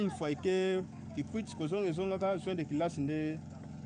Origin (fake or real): fake